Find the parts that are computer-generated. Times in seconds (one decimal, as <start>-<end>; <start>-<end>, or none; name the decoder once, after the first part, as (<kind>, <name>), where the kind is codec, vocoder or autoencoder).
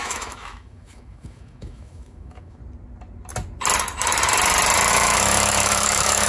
0.0-2.6 (autoencoder, DAC-VAE); 4.9-6.3